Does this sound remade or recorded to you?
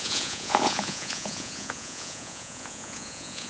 remade